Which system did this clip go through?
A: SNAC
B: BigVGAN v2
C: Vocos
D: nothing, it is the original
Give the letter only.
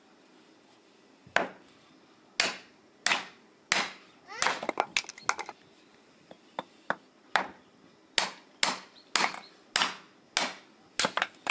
D